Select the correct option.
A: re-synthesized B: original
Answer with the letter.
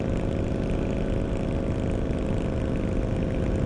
B